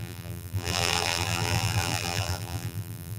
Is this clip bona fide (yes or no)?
no